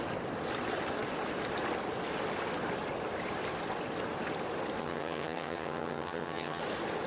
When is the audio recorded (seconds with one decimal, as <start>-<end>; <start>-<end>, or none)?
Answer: 0.0-4.8; 6.6-7.1